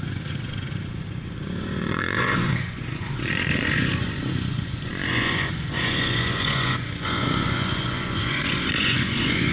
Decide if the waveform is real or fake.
fake